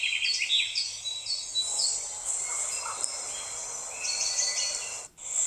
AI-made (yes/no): no